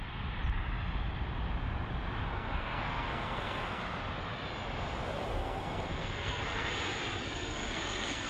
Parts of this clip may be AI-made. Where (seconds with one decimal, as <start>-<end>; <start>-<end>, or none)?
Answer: 2.3-3.8; 5.4-6.7; 7.2-8.3